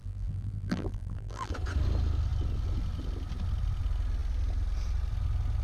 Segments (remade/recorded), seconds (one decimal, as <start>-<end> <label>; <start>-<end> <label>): 0.0-1.5 remade; 1.5-5.6 recorded

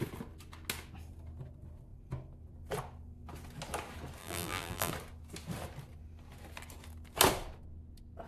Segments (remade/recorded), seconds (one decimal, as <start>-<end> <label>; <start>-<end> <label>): 0.0-4.2 recorded; 4.2-4.9 remade; 4.9-8.3 recorded

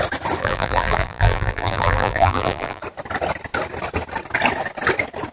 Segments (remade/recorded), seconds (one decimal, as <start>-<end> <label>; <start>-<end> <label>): 0.0-0.4 recorded; 0.4-2.8 remade; 2.8-5.3 recorded

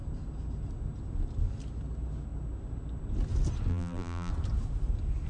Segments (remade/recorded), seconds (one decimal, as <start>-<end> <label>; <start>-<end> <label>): 0.0-3.7 recorded; 3.7-4.3 remade; 4.3-5.3 recorded

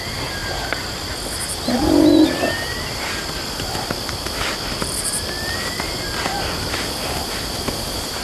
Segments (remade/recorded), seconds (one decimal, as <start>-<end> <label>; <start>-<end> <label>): 0.0-0.4 remade; 0.4-4.7 recorded; 4.7-8.2 remade

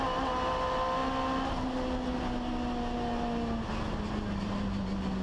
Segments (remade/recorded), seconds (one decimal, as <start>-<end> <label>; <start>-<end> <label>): 0.0-5.2 recorded

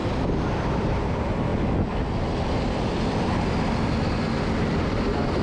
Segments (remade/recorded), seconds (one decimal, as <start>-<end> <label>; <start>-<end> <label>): 0.0-0.8 recorded; 0.8-1.5 remade; 1.5-4.7 recorded; 4.7-5.4 remade